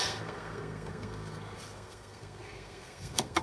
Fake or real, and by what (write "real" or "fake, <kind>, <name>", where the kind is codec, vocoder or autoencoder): fake, codec, SNAC